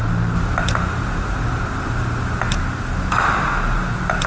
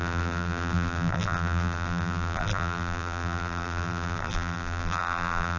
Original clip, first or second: first